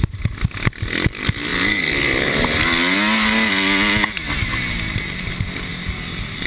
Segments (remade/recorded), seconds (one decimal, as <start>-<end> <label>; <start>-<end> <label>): 0.0-6.5 recorded